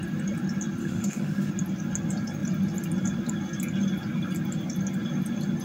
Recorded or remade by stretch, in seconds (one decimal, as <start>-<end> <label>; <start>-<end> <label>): 0.0-0.8 recorded; 0.8-1.5 remade; 1.5-5.6 recorded